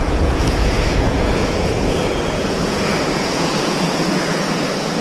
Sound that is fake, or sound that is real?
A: fake